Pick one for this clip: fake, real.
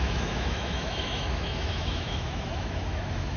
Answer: fake